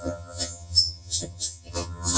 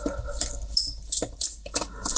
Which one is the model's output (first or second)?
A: first